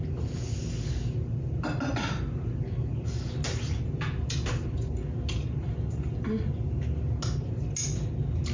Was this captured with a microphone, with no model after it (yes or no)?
yes